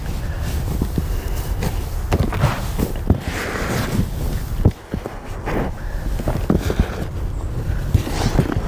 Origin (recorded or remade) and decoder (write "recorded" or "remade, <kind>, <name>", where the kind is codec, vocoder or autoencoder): recorded